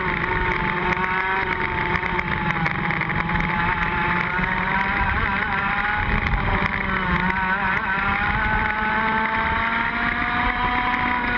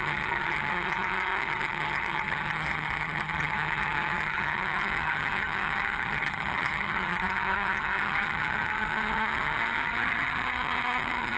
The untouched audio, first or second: first